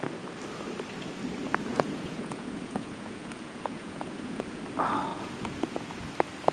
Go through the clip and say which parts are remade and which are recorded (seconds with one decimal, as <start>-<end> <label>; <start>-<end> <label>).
0.0-1.7 recorded; 1.7-4.6 remade; 4.6-5.1 recorded; 5.1-5.9 remade; 5.9-6.5 recorded